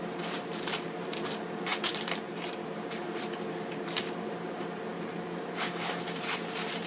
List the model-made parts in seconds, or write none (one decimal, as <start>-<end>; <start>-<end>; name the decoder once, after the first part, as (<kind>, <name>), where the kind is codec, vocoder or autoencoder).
0.0-6.9 (vocoder, BigVGAN v2)